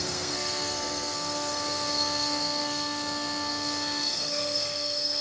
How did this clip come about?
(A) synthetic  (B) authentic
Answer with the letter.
A